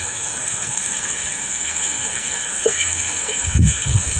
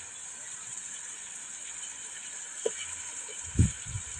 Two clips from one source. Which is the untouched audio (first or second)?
second